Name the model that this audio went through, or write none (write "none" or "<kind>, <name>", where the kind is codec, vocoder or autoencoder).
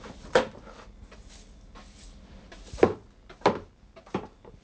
none